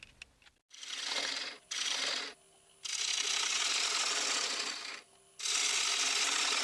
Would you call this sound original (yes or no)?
yes